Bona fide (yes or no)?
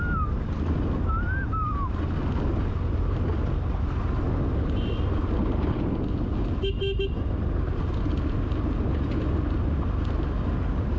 yes